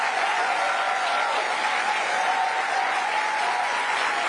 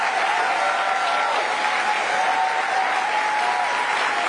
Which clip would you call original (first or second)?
second